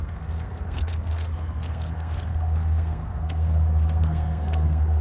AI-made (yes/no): yes